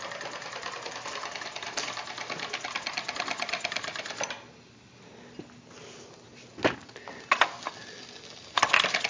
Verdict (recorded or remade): recorded